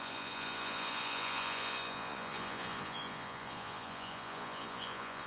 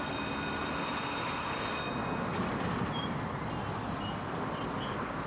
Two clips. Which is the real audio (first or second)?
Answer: second